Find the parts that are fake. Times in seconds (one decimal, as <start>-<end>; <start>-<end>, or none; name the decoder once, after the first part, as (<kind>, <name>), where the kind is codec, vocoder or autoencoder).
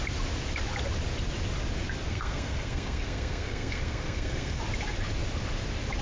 2.1-4.6 (codec, SNAC)